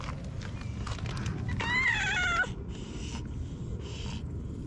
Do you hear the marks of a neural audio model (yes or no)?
no